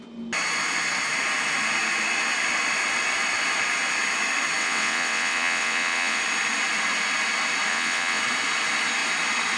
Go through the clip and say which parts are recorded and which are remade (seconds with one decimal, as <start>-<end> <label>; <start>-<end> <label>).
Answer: 0.0-4.6 recorded; 4.6-6.2 remade; 6.2-7.7 recorded; 7.7-8.2 remade; 8.2-9.6 recorded